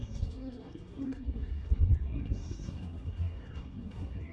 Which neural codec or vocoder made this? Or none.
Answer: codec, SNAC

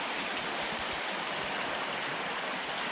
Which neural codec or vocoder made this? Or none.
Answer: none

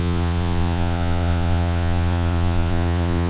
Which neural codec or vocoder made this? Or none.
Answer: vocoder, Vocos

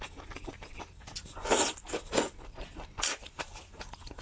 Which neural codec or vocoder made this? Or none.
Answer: none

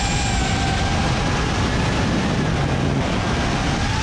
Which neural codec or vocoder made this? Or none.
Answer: none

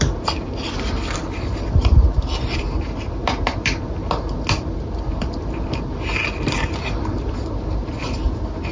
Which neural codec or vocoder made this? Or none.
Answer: none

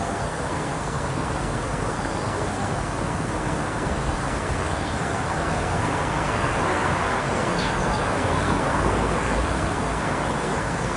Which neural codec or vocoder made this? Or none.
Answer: codec, SNAC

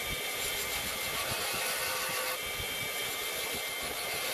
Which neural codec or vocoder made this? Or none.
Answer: none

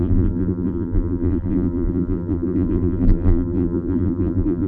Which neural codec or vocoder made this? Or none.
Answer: vocoder, BigVGAN v2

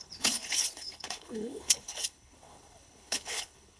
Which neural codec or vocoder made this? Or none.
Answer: codec, HILCodec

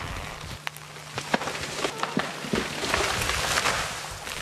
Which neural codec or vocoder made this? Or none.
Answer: none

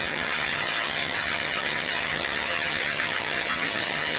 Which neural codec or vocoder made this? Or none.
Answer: vocoder, HiFi-GAN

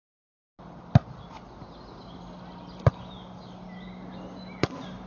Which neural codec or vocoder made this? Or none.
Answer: none